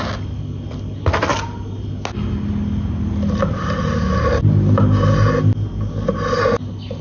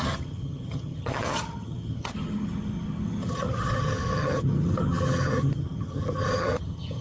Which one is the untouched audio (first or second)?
first